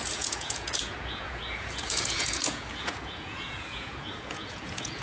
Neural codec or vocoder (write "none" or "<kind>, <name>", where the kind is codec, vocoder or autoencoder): vocoder, Vocos